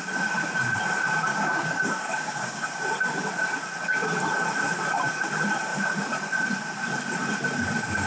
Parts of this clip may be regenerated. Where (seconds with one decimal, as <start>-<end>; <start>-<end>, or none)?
1.3-2.9